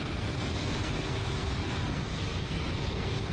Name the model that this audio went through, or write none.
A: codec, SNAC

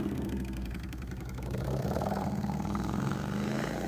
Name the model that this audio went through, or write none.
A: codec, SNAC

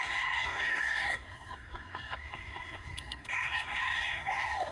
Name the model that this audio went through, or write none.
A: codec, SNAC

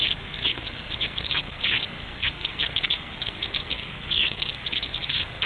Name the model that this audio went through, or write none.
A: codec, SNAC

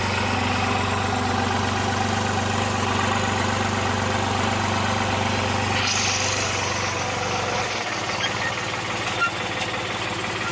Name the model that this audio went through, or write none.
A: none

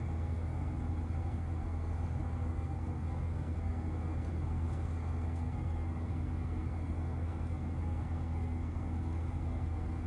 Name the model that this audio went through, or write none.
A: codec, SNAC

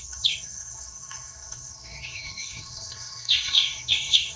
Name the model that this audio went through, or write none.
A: codec, SNAC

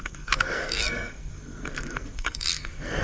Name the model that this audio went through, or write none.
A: codec, SNAC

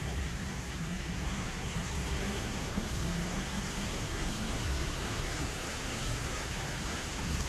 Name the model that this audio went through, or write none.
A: codec, SNAC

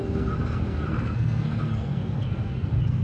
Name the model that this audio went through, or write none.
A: codec, SNAC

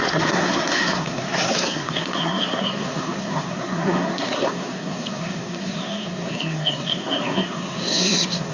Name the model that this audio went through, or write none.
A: codec, SNAC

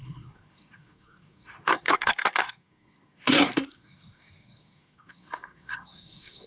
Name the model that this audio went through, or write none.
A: codec, SNAC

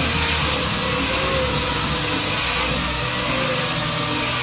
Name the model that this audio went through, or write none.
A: none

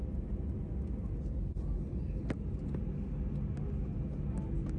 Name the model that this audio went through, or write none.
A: none